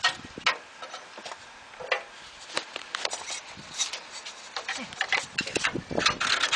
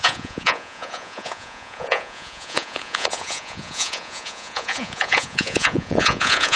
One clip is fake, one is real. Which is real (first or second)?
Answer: first